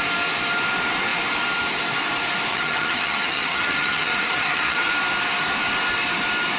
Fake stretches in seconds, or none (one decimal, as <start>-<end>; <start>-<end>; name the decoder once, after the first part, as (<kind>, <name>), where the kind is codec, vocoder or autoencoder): 2.5-4.9 (vocoder, HiFi-GAN)